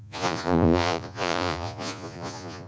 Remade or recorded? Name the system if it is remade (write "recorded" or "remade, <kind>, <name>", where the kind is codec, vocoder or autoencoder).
remade, vocoder, Vocos